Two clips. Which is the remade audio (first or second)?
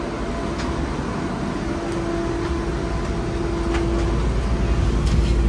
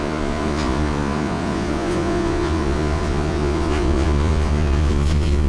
second